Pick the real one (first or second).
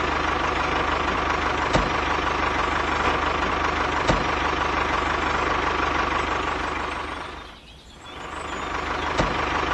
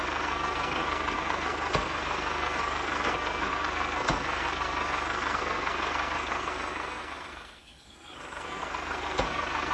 first